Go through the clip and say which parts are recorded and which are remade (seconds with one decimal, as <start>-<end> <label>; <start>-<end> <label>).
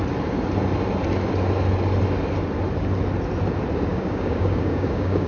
0.0-3.9 recorded; 3.9-5.3 remade